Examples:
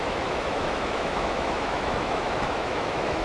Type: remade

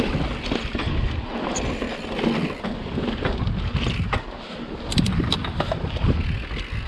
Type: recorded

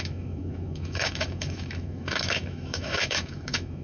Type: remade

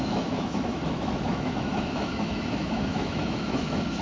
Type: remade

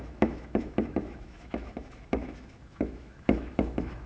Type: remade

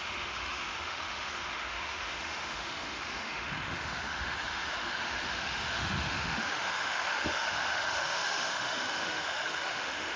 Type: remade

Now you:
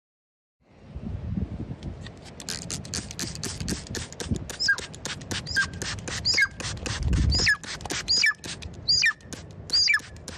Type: recorded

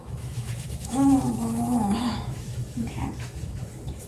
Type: remade